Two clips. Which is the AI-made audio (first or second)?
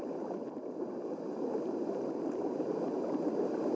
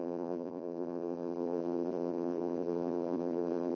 second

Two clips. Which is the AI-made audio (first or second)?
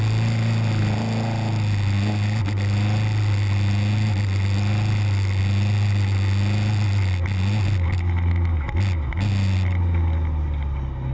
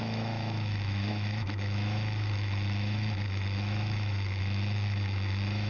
second